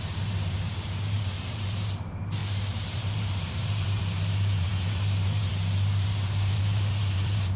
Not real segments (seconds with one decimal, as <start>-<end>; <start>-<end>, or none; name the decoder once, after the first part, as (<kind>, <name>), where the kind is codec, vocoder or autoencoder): 0.0-7.6 (vocoder, BigVGAN v2)